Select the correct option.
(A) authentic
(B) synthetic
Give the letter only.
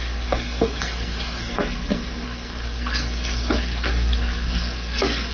B